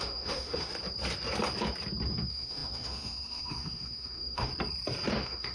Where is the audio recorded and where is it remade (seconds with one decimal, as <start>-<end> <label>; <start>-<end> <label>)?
0.0-0.7 remade; 0.7-2.1 recorded; 2.1-4.5 remade; 4.5-5.1 recorded; 5.1-5.5 remade